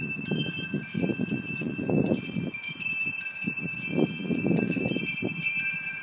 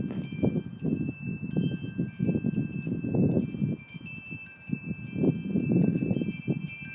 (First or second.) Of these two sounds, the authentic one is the second